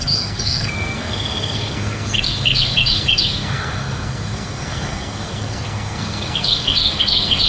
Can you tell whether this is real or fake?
fake